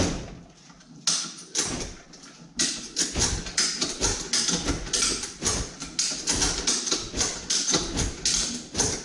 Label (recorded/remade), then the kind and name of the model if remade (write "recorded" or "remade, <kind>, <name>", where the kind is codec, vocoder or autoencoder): recorded